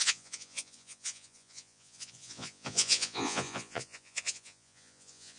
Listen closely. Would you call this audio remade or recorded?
remade